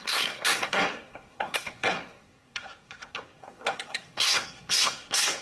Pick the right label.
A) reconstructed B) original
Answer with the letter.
A